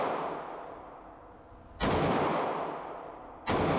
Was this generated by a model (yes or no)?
no